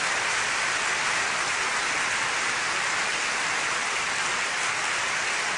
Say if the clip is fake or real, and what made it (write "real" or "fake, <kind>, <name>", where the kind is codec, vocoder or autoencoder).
real